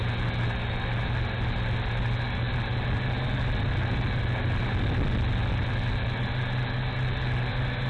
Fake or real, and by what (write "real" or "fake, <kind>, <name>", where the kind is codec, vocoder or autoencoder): real